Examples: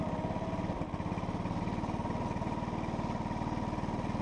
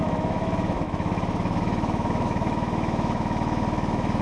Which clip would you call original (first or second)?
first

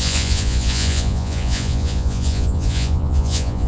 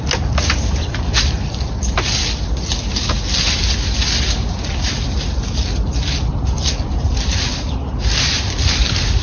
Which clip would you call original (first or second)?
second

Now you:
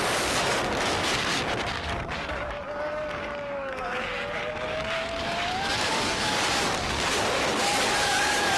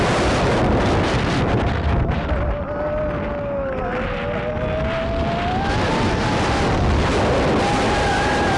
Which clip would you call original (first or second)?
second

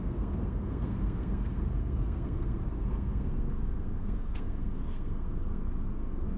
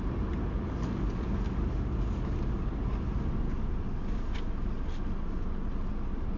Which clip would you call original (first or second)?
second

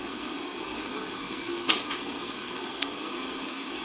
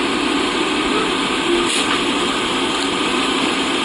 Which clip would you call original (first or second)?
second